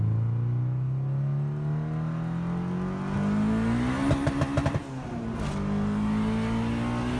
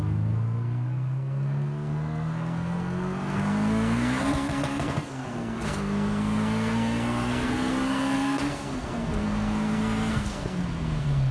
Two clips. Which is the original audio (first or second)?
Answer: first